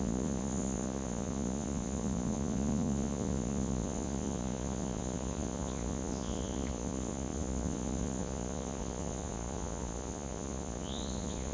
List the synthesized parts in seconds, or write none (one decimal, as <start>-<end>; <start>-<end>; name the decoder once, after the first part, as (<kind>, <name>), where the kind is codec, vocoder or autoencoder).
0.0-11.5 (vocoder, Vocos)